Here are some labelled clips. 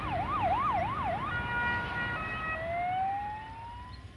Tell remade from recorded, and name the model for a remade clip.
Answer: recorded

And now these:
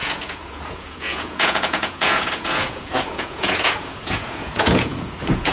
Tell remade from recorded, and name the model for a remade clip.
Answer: remade, vocoder, Vocos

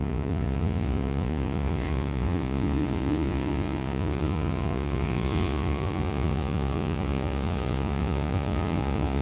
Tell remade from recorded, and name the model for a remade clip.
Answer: remade, vocoder, Vocos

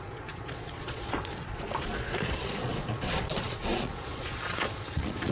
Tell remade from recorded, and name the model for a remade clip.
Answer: remade, vocoder, Vocos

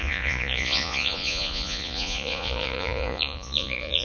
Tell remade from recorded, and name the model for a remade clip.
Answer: remade, vocoder, Vocos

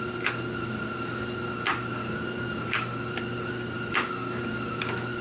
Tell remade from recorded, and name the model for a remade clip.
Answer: recorded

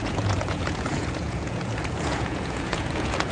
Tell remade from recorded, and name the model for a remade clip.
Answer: remade, vocoder, Vocos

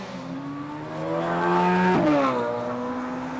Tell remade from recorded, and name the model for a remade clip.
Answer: recorded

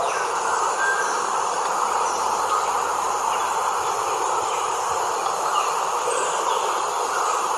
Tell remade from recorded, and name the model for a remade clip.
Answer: recorded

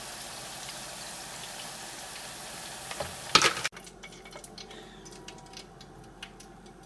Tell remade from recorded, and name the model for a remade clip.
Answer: recorded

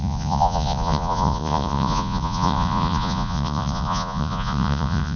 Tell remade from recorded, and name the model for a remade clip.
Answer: remade, vocoder, Vocos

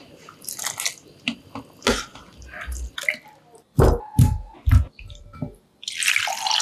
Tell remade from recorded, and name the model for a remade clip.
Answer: recorded